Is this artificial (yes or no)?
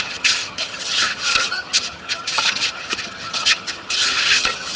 yes